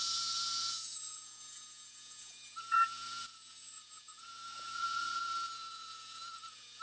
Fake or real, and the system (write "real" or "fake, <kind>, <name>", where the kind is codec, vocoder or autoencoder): fake, vocoder, Vocos